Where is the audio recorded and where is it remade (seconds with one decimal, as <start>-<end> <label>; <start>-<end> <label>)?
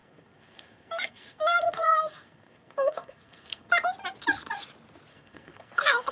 0.0-3.7 remade; 3.7-5.1 recorded; 5.1-6.1 remade